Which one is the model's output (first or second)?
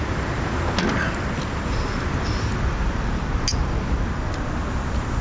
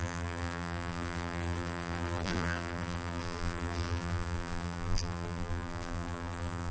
second